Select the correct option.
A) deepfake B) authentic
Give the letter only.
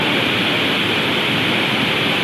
B